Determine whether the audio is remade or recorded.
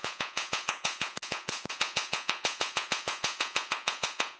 remade